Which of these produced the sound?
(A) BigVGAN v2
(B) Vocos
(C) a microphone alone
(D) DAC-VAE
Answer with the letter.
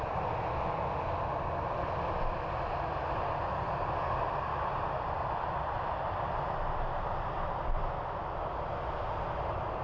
C